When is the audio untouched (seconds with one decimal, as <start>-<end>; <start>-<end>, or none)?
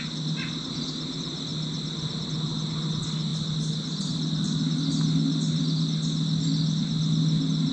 0.0-7.7